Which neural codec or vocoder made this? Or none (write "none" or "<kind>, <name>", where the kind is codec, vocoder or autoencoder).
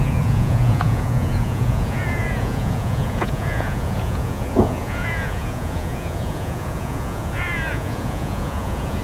vocoder, Vocos